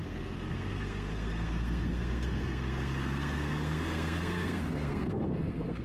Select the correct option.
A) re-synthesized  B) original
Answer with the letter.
A